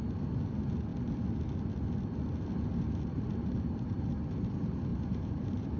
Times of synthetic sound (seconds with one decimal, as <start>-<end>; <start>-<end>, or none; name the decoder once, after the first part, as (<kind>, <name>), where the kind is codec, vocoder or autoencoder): 4.9-5.8 (vocoder, BigVGAN v2)

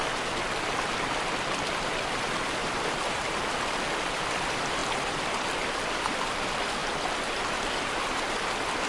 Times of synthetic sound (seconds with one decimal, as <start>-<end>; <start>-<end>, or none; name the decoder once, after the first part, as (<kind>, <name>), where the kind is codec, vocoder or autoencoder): 0.9-6.8 (vocoder, BigVGAN v2); 7.7-8.9